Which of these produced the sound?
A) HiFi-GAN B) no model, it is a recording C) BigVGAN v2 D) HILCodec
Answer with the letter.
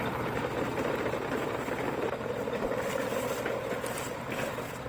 C